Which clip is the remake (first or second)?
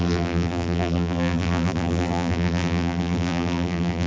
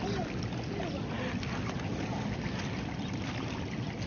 first